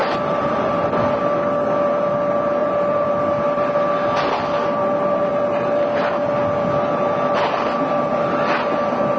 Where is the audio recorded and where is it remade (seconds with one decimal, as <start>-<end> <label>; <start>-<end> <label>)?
0.0-1.2 remade; 1.2-2.6 recorded; 2.6-3.1 remade; 3.1-9.2 recorded